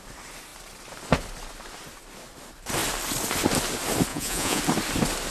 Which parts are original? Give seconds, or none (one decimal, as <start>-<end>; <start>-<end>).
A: 0.0-4.1; 4.6-5.3